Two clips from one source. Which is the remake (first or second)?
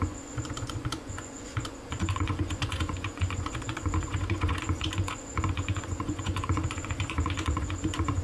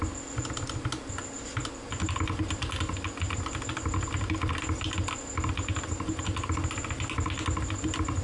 first